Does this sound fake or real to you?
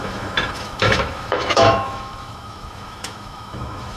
fake